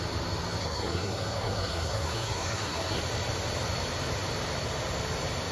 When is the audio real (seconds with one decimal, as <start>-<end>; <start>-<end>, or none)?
0.0-0.6; 3.0-5.5